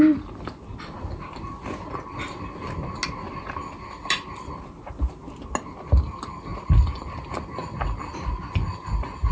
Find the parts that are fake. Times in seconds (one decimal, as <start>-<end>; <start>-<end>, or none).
6.5-7.0